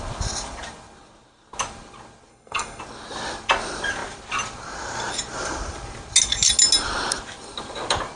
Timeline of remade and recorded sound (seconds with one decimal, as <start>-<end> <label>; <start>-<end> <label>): 0.0-2.3 recorded; 2.3-2.8 remade; 2.8-8.2 recorded